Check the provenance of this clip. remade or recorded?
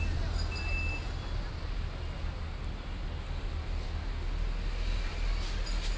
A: recorded